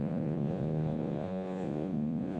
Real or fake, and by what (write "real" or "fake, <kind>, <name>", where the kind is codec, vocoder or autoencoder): fake, vocoder, Vocos